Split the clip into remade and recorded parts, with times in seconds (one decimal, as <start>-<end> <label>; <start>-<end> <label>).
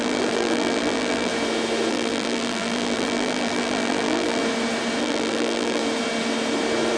0.0-1.3 remade; 1.3-1.9 recorded; 1.9-4.4 remade; 4.4-5.0 recorded; 5.0-5.8 remade; 5.8-7.0 recorded